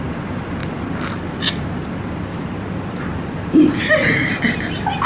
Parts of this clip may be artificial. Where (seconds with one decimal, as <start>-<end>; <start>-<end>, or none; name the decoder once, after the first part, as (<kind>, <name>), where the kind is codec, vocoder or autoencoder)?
none